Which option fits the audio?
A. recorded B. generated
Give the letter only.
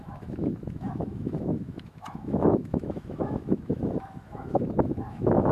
B